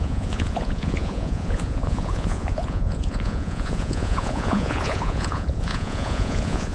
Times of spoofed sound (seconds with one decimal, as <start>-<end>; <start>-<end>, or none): 0.0-6.7